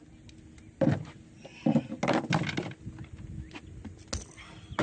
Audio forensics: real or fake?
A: real